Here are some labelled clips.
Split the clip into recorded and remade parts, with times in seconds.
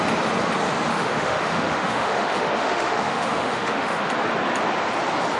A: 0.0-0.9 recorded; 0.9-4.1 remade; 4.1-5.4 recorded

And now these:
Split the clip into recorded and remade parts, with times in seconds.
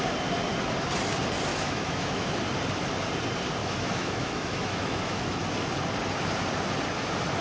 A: 0.0-1.5 recorded; 1.5-2.4 remade; 2.4-3.6 recorded; 3.6-5.4 remade; 5.4-7.4 recorded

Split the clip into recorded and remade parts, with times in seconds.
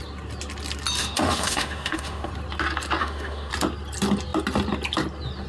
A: 0.0-1.0 recorded; 1.0-2.3 remade; 2.3-3.0 recorded; 3.0-3.5 remade; 3.5-5.5 recorded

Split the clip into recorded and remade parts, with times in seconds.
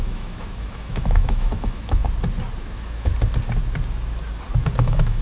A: 0.0-2.0 remade; 2.0-2.6 recorded; 2.6-3.1 remade; 3.1-4.8 recorded; 4.8-5.2 remade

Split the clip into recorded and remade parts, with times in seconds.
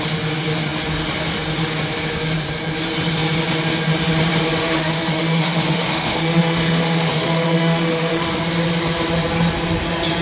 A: 0.0-4.6 recorded; 4.6-8.3 remade; 8.3-10.2 recorded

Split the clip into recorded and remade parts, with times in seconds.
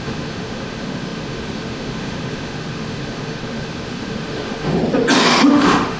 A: 0.0-4.8 remade; 4.8-5.5 recorded; 5.5-6.0 remade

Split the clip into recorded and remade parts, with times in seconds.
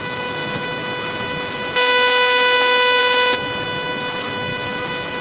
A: 0.0-5.2 remade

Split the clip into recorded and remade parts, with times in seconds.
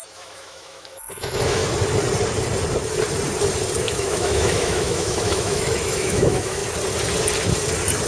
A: 0.0-1.6 remade; 1.6-3.8 recorded; 3.8-6.6 remade; 6.6-8.1 recorded